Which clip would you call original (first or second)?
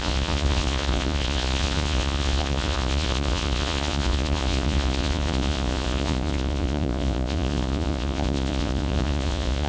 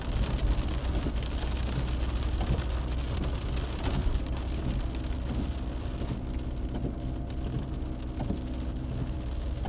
second